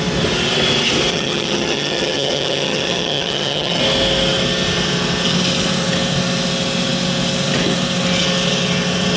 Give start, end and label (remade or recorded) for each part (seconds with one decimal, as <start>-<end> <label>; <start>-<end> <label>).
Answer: 0.0-1.1 recorded; 1.1-3.8 remade; 3.8-9.2 recorded